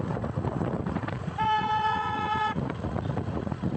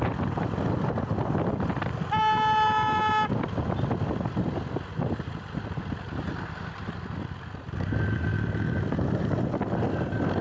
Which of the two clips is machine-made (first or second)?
first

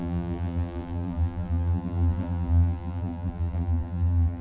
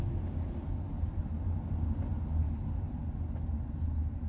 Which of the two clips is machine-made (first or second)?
first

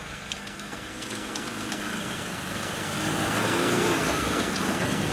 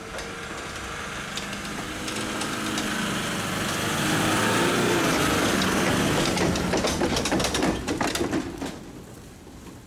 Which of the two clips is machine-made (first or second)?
first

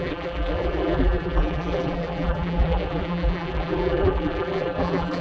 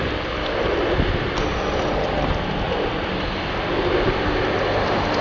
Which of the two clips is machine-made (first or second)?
first